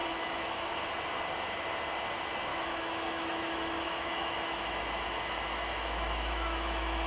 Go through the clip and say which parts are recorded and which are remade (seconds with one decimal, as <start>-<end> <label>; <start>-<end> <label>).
0.0-0.7 remade; 0.7-2.5 recorded; 2.5-7.1 remade